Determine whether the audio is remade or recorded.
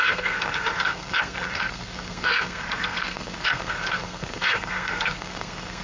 remade